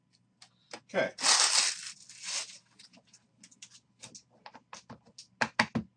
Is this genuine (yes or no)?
yes